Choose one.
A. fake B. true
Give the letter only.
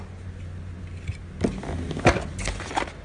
B